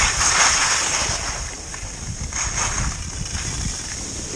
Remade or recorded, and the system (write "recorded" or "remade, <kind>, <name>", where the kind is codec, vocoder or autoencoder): recorded